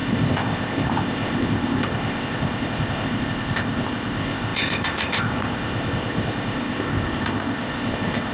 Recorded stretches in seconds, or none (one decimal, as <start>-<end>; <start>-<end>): none